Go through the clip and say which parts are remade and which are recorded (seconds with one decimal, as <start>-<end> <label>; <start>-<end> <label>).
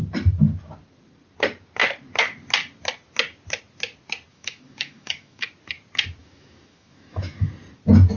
0.0-4.3 recorded; 4.3-5.5 remade; 5.5-6.2 recorded; 6.2-7.5 remade; 7.5-8.2 recorded